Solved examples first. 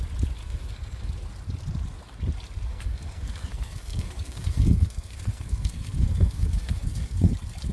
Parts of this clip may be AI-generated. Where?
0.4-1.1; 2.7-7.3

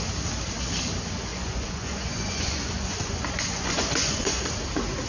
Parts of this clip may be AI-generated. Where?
1.3-4.4